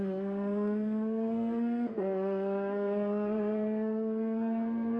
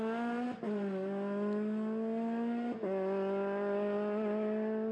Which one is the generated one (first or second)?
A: first